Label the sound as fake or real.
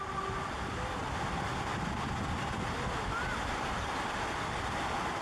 real